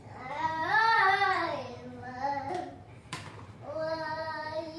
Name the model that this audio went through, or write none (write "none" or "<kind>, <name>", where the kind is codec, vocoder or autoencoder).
vocoder, BigVGAN v2